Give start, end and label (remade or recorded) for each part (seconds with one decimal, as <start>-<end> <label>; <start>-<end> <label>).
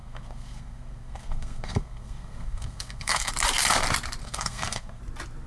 0.0-3.3 remade; 3.3-4.2 recorded; 4.2-5.0 remade; 5.0-5.5 recorded